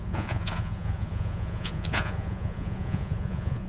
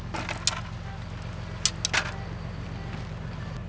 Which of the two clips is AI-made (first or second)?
first